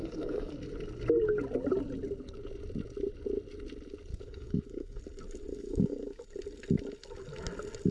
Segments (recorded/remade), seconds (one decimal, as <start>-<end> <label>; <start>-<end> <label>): 0.0-0.5 remade; 0.5-4.1 recorded; 4.1-5.0 remade; 5.0-5.5 recorded; 5.5-6.2 remade; 6.2-7.9 recorded